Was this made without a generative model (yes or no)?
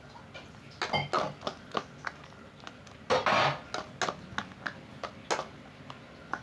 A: yes